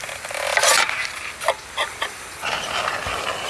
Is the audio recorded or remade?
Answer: recorded